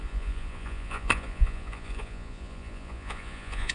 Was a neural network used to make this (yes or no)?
yes